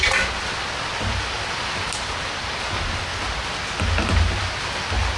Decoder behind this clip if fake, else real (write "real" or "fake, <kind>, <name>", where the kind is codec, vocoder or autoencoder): real